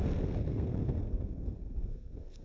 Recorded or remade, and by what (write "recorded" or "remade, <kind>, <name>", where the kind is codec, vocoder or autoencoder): remade, codec, SNAC